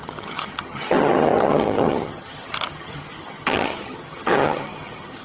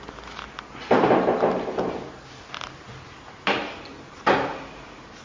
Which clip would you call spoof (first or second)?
first